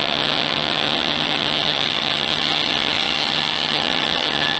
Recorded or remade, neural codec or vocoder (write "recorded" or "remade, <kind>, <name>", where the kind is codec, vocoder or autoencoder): remade, vocoder, HiFi-GAN